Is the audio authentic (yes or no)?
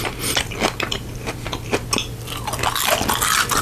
yes